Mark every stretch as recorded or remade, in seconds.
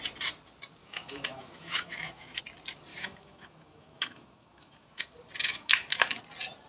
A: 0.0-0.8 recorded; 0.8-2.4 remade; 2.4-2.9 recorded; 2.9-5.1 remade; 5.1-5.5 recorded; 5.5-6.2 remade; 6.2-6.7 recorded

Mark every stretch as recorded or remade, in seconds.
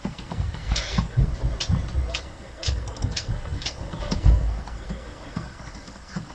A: 0.0-1.3 remade; 1.3-2.1 recorded; 2.1-6.3 remade